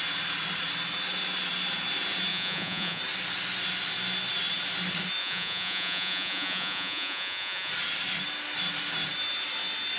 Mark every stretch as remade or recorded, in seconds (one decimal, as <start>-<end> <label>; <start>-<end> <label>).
0.0-2.3 recorded; 2.3-3.0 remade; 3.0-5.2 recorded; 5.2-7.7 remade; 7.7-10.0 recorded